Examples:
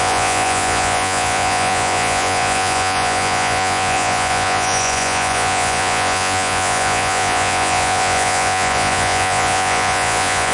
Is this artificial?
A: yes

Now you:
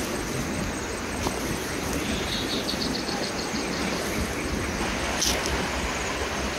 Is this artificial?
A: no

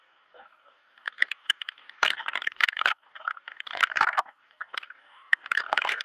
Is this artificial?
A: yes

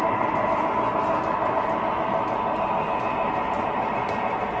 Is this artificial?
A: no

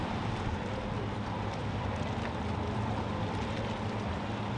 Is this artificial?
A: no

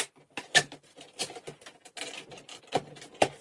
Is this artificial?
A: no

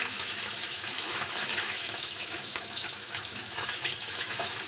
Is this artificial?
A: yes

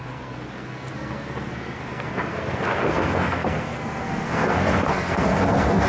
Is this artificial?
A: yes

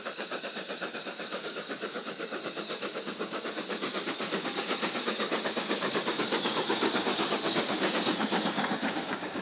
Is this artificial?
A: yes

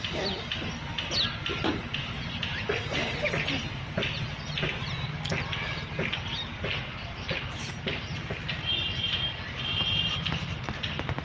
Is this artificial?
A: no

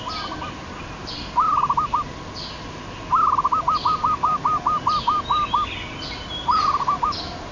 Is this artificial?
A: no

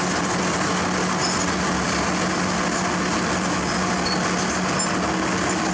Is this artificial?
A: no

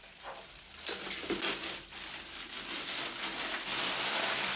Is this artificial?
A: no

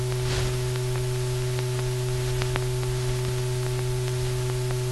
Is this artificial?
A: no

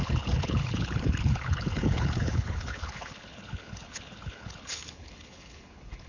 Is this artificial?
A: yes